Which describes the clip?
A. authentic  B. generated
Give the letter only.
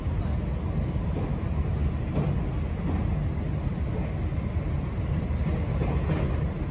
A